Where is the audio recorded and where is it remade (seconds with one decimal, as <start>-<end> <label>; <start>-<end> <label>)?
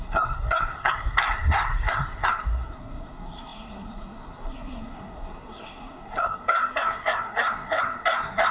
0.0-8.5 remade